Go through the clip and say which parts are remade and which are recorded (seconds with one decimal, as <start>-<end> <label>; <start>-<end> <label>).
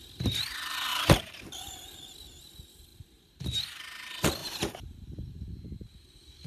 0.0-0.9 recorded; 0.9-2.1 remade; 2.1-2.9 recorded; 2.9-3.8 remade; 3.8-4.4 recorded; 4.4-5.5 remade; 5.5-6.5 recorded